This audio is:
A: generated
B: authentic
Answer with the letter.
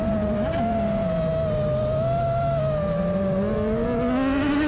B